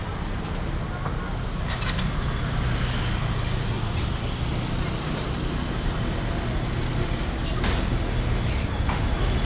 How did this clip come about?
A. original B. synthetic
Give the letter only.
A